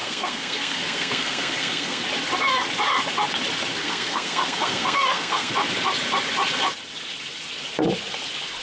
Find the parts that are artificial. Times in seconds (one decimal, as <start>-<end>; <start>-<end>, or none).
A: 0.0-2.0; 3.8-5.5